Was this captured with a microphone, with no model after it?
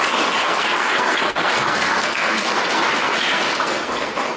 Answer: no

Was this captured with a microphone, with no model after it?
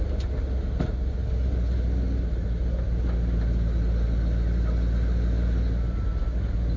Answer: yes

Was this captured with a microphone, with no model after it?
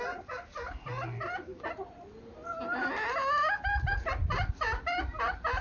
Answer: yes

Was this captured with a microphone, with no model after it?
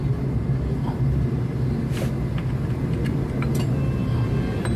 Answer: yes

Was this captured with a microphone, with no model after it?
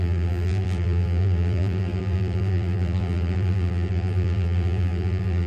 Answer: no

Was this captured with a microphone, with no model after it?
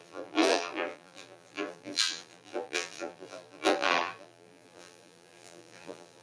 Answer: no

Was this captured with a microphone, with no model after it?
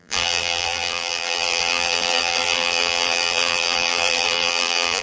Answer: no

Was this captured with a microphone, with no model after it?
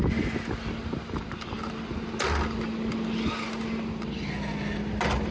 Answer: yes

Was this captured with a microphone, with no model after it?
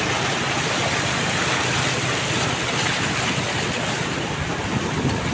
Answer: yes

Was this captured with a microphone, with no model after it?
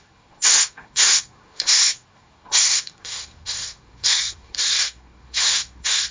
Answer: no